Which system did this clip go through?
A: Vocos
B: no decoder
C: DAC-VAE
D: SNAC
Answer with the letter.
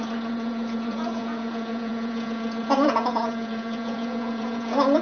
A